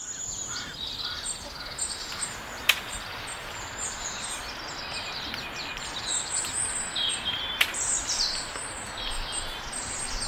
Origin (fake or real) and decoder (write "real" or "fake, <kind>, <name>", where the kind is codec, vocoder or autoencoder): real